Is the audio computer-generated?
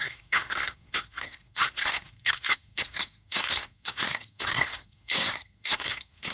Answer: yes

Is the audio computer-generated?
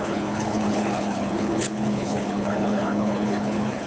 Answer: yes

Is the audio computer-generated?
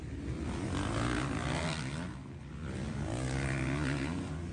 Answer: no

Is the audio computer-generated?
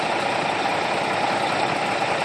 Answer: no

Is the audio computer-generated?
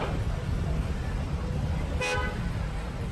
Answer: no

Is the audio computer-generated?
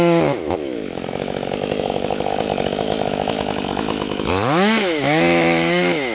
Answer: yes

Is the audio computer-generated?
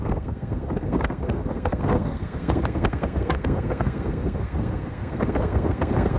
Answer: yes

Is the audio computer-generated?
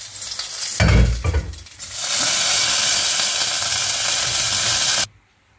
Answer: no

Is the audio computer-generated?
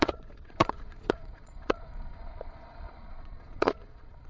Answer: yes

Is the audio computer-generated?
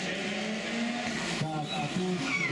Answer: no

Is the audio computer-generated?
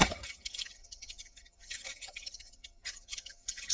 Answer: yes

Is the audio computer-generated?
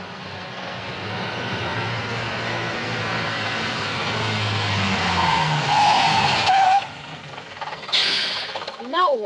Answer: yes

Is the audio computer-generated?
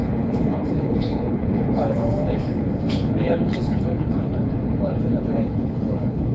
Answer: yes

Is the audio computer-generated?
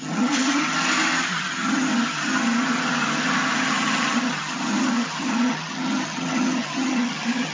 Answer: yes